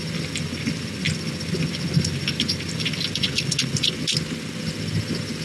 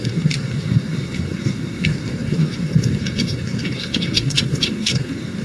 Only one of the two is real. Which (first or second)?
first